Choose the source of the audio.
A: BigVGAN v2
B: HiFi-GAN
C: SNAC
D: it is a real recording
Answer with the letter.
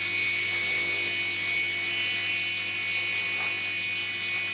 D